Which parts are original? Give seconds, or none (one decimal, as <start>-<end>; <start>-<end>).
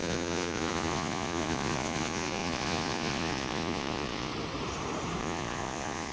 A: 4.3-5.2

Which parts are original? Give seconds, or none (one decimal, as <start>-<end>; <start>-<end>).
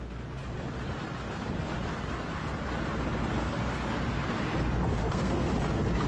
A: 0.0-5.0; 5.5-6.1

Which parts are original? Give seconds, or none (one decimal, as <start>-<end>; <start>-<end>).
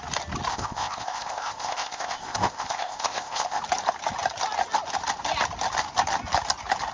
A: 0.0-0.5; 3.6-6.9